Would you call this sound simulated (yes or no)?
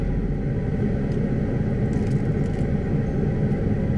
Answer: no